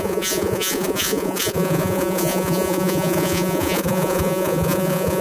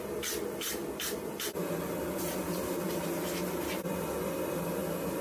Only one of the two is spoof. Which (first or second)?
first